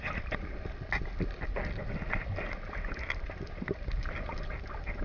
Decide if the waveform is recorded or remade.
recorded